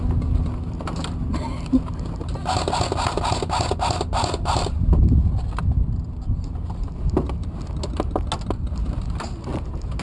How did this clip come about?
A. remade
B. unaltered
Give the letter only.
B